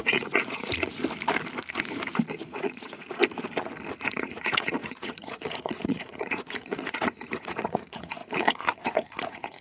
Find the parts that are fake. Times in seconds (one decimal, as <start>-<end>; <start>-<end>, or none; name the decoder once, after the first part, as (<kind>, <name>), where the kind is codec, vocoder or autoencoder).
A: 0.0-1.0 (vocoder, Vocos); 2.5-3.2; 3.9-9.6